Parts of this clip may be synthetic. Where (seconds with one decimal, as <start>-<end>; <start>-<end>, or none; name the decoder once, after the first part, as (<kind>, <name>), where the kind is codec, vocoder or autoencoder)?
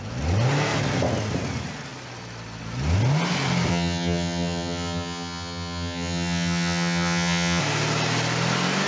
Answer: 3.7-7.6 (vocoder, HiFi-GAN)